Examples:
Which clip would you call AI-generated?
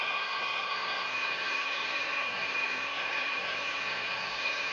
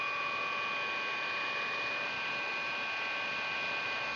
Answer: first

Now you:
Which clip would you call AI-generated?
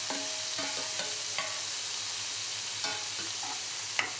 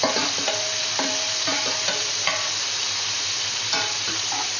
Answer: second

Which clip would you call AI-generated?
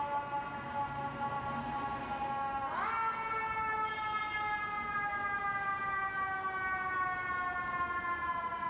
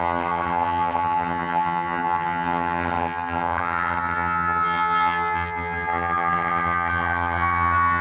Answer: second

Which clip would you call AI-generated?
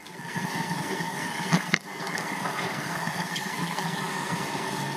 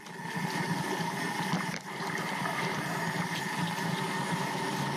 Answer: first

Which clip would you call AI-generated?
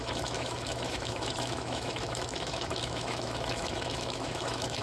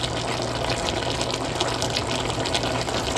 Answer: first